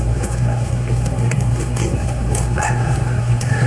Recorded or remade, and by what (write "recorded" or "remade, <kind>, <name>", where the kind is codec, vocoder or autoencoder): remade, codec, SNAC